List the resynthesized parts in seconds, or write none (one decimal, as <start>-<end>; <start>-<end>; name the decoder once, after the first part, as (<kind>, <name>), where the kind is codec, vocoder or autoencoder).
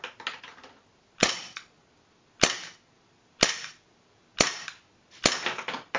1.2-1.9 (vocoder, Vocos)